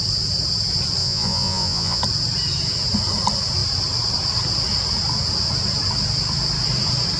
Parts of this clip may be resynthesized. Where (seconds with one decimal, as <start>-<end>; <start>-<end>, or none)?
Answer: 1.0-2.0